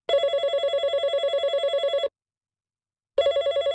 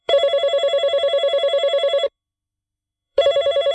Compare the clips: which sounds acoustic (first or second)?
first